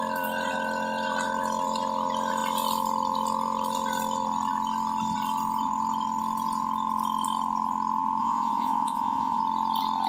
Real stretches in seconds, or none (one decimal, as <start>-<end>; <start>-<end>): 0.0-8.2; 9.4-10.1